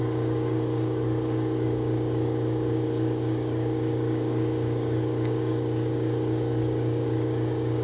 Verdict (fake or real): fake